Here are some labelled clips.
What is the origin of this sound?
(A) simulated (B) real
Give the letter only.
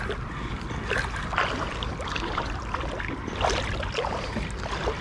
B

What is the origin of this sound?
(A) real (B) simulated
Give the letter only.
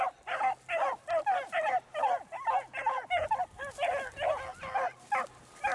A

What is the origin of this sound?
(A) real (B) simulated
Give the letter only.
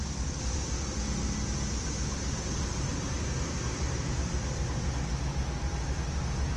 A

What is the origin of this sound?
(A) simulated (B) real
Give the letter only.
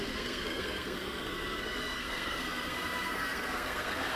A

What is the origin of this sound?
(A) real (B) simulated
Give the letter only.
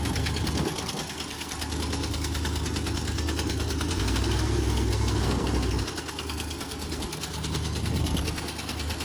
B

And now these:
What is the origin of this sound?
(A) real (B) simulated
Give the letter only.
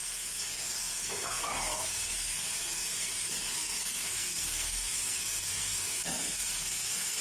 B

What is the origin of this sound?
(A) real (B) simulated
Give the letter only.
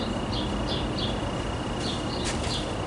A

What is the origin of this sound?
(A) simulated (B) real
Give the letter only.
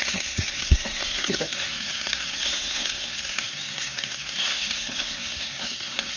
A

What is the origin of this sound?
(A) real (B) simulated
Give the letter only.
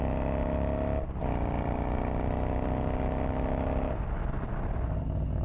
A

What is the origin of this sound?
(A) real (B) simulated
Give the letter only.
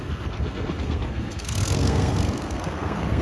B